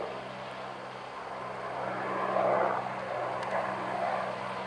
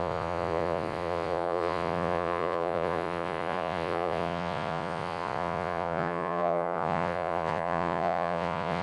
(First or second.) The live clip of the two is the first